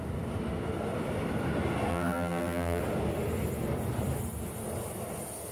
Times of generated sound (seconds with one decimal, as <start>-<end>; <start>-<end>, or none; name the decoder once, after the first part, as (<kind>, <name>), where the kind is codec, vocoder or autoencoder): 1.9-2.8 (vocoder, BigVGAN v2)